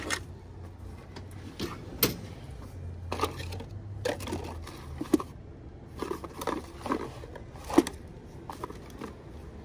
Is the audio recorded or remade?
recorded